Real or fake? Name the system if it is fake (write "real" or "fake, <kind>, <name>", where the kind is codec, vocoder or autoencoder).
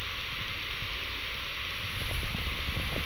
real